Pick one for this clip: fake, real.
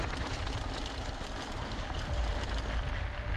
real